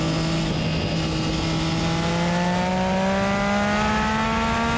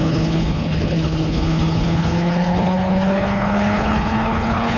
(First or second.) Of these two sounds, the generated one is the second